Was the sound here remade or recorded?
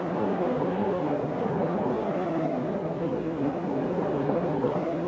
remade